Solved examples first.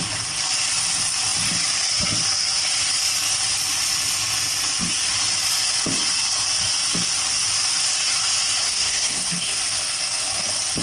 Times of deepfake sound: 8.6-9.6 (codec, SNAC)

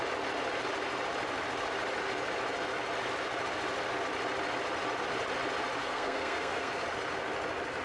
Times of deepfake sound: 5.8-6.8 (codec, SNAC)

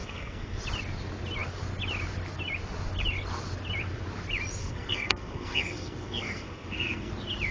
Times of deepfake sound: 0.0-0.6 (codec, SNAC); 4.6-7.1

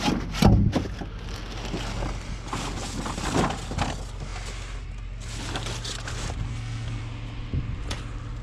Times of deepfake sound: 6.5-7.0 (codec, SNAC)

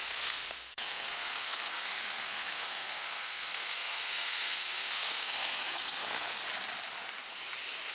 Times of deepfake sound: 0.0-6.4 (codec, SNAC)

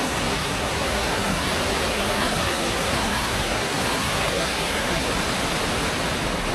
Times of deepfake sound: 0.0-1.5 (codec, SNAC); 1.9-5.1

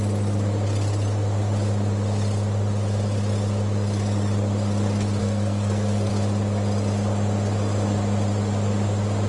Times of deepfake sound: 5.2-6.1 (codec, SNAC)